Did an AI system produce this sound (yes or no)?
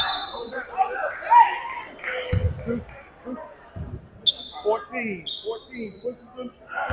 no